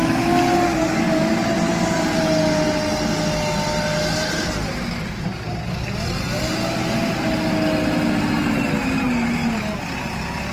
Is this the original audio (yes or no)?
yes